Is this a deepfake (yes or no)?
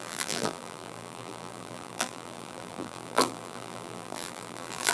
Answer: yes